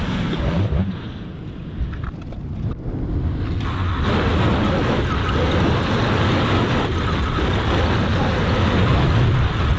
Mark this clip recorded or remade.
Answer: recorded